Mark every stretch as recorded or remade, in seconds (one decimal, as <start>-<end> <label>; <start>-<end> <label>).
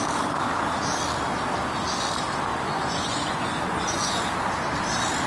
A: 0.0-2.5 recorded; 2.5-4.3 remade; 4.3-5.3 recorded